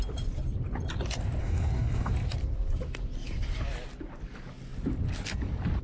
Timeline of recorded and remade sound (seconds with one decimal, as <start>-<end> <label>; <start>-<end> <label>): 0.0-1.4 recorded; 1.4-2.1 remade; 2.1-5.8 recorded